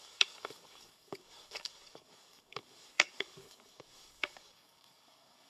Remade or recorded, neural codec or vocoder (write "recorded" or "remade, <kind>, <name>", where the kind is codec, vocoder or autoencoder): remade, codec, DAC